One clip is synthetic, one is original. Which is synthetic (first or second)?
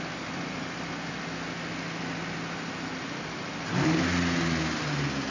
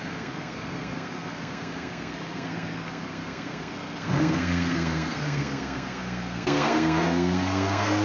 second